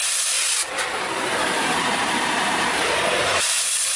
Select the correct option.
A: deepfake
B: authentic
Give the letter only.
A